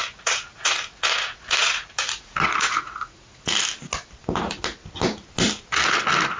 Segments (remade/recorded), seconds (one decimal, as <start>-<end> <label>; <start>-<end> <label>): 0.0-3.5 remade; 3.5-6.4 recorded